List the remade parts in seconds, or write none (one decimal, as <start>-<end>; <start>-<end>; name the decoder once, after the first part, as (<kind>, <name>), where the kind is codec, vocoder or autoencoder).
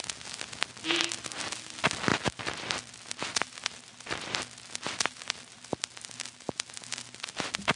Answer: none